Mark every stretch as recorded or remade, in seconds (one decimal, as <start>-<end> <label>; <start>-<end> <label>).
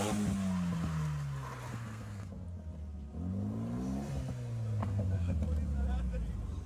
0.0-1.7 recorded; 1.7-2.3 remade; 2.3-4.8 recorded; 4.8-5.4 remade; 5.4-6.7 recorded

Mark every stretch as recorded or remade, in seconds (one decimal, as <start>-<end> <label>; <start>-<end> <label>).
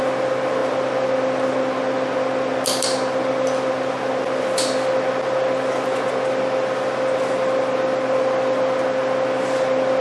0.0-10.0 recorded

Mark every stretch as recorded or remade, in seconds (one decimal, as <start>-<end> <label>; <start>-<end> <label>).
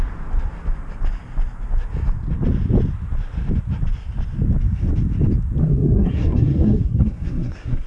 0.0-5.6 recorded; 5.6-7.9 remade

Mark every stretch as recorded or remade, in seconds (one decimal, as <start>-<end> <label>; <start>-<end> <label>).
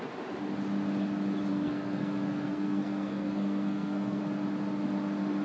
0.0-1.5 recorded; 1.5-4.2 remade; 4.2-5.4 recorded